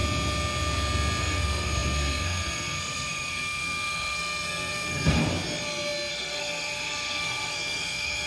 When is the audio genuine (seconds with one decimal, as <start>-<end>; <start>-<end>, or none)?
0.0-1.2; 5.2-6.1